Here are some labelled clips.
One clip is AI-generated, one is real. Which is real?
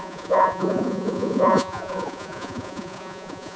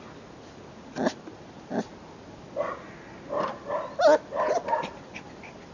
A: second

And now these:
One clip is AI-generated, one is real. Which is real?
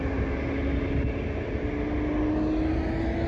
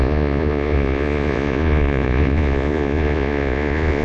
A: first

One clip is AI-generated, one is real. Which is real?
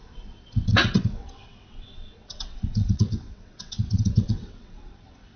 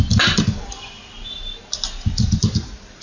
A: second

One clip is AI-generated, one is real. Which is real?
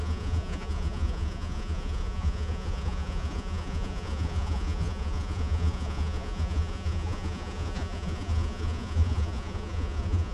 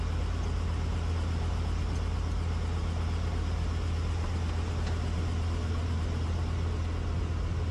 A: second